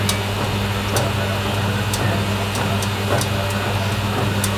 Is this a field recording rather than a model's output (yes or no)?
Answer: yes